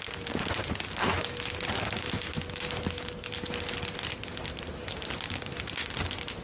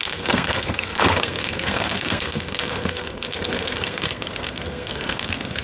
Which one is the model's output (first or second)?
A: second